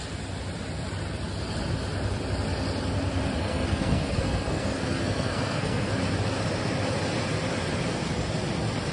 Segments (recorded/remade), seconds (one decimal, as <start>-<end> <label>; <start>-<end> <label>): 0.0-3.4 recorded; 3.4-5.9 remade; 5.9-8.9 recorded